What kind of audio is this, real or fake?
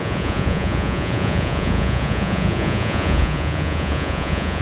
fake